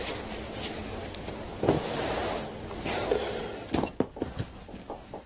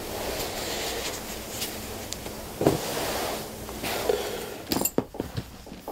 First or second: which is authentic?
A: second